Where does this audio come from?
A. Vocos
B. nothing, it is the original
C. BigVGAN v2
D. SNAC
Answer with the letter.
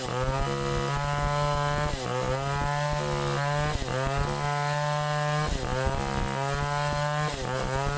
B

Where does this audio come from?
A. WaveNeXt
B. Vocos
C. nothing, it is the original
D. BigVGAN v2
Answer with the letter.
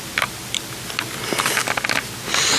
C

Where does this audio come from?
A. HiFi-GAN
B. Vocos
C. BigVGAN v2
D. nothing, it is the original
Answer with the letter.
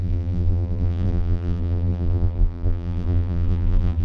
C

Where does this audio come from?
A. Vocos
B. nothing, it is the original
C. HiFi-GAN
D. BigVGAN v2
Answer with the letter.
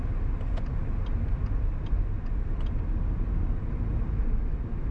B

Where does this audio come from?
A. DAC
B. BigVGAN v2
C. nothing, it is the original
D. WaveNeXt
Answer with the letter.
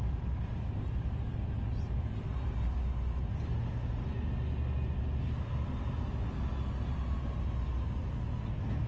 C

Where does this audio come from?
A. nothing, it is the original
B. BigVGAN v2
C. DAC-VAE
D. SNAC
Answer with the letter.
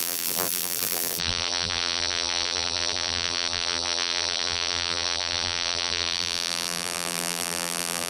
B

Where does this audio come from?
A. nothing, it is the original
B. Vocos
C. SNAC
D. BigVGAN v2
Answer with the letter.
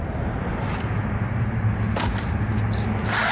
A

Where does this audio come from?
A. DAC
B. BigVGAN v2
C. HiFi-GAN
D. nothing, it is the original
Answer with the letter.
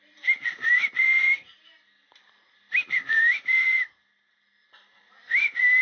B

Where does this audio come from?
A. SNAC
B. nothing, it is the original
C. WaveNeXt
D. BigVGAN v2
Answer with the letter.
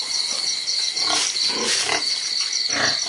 B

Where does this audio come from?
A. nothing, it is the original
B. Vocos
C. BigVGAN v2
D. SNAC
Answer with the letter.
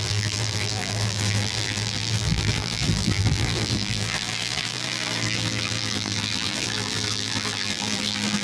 C